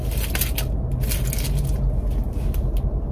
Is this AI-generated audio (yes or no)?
no